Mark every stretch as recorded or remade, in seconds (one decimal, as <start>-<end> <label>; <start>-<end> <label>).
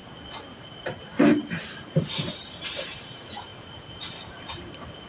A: 0.0-0.6 recorded; 0.6-5.1 remade